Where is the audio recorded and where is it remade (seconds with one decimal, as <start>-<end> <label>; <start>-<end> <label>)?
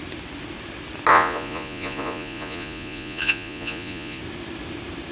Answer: 0.0-1.1 recorded; 1.1-4.2 remade; 4.2-5.1 recorded